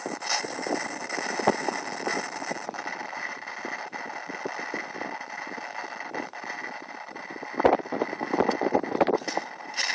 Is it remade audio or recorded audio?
recorded